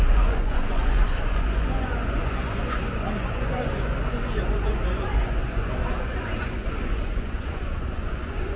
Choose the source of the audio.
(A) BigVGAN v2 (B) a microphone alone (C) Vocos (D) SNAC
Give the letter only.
C